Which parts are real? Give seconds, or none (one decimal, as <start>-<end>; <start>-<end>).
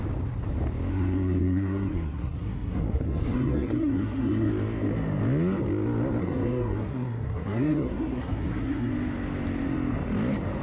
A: 0.0-0.9; 4.5-6.2; 8.9-10.6